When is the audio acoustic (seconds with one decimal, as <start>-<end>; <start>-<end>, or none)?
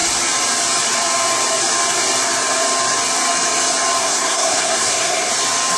0.0-4.0; 5.3-5.8